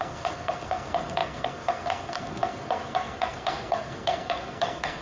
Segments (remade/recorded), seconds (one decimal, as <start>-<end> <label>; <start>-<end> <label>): 0.0-5.0 remade

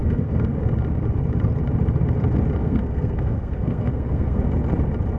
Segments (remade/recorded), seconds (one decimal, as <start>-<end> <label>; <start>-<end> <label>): 0.0-0.6 remade; 0.6-2.6 recorded; 2.6-4.4 remade; 4.4-5.2 recorded

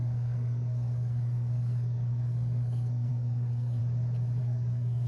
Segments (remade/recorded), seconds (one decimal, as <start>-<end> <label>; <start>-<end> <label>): 0.0-3.8 remade; 3.8-4.4 recorded; 4.4-5.1 remade

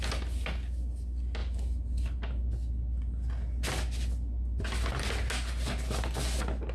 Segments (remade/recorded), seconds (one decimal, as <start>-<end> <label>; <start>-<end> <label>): 0.0-6.7 recorded

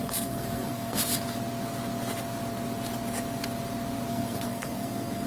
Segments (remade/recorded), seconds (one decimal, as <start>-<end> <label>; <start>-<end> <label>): 0.0-1.1 remade; 1.1-4.1 recorded; 4.1-5.3 remade